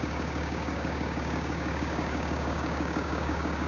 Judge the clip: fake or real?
fake